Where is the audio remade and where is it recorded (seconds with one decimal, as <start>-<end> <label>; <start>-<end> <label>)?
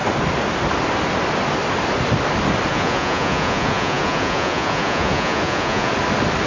0.0-2.7 recorded; 2.7-5.9 remade; 5.9-6.5 recorded